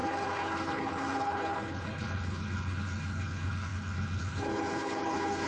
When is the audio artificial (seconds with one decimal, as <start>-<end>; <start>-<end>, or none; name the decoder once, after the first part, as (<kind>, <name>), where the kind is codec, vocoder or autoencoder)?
0.0-5.5 (codec, HILCodec)